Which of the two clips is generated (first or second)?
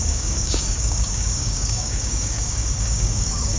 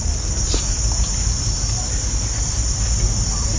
first